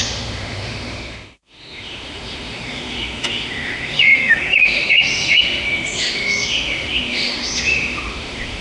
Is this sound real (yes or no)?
no